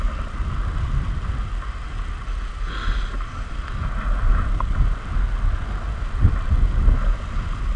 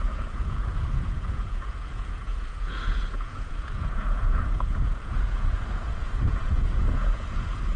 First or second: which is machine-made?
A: second